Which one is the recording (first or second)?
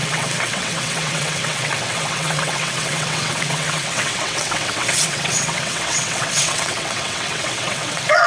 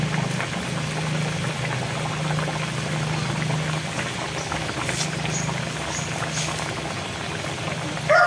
second